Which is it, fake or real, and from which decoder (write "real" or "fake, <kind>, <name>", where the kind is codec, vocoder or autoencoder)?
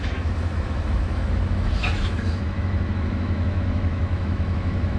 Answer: fake, autoencoder, DAC-VAE